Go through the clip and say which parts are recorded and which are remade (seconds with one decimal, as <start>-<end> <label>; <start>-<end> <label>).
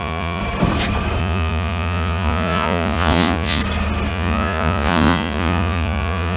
0.0-0.4 remade; 0.4-1.2 recorded; 1.2-3.6 remade; 3.6-4.1 recorded; 4.1-6.4 remade